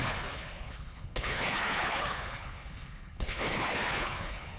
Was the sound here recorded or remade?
remade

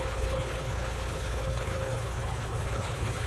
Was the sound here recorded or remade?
remade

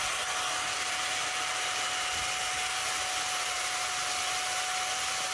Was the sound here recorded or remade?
recorded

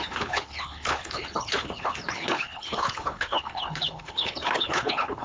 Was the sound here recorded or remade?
remade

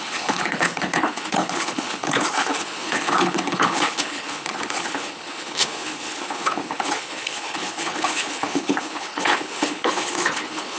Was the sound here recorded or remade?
remade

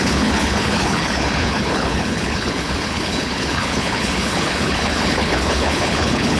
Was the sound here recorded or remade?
remade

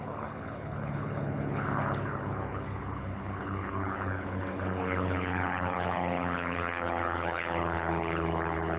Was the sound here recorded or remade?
remade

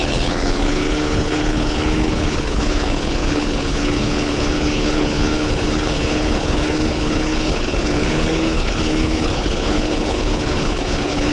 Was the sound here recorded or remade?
remade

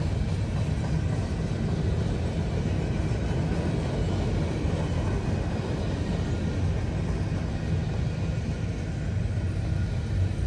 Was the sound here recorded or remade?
recorded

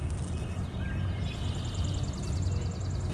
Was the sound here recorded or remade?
recorded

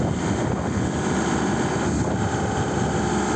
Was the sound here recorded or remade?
recorded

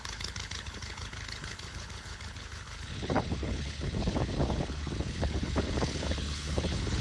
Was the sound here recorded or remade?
remade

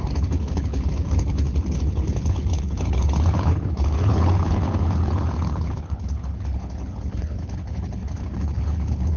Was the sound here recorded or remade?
remade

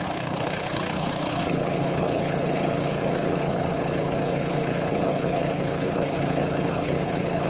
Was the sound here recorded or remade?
remade